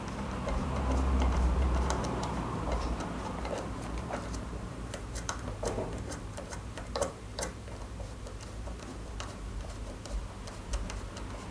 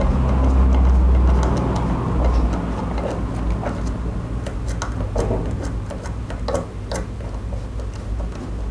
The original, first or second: second